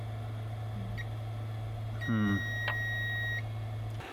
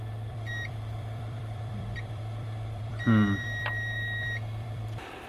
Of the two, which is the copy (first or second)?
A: second